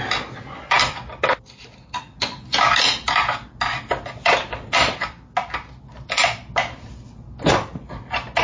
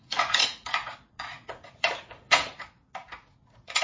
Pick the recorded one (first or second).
first